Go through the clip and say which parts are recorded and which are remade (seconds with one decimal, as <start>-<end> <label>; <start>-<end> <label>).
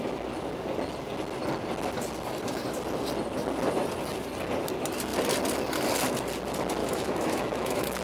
0.0-6.8 recorded; 6.8-8.0 remade